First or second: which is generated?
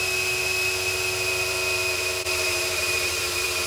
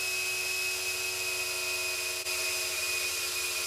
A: first